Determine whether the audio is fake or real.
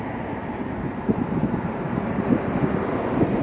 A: fake